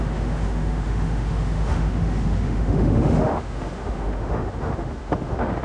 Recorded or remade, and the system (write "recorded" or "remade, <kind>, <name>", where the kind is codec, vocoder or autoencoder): remade, autoencoder, DAC-VAE